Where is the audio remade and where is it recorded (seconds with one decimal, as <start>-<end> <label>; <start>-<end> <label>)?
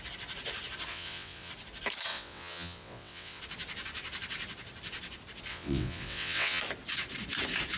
0.0-0.9 recorded; 0.9-1.5 remade; 1.5-2.1 recorded; 2.1-3.4 remade; 3.4-5.5 recorded; 5.5-6.6 remade; 6.6-7.8 recorded